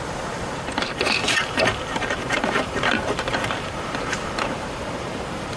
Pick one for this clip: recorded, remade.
remade